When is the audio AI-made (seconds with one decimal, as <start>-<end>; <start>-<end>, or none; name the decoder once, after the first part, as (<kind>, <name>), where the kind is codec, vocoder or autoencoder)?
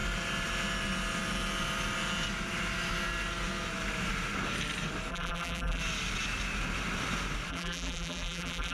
5.1-5.8 (vocoder, BigVGAN v2); 7.5-8.7